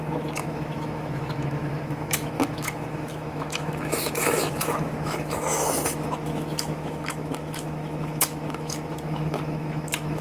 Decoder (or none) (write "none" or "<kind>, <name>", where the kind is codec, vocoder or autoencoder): autoencoder, DAC-VAE